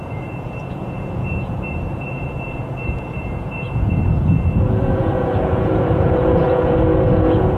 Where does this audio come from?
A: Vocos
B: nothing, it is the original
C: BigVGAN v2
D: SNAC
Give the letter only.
A